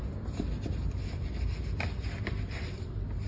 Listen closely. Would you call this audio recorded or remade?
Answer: recorded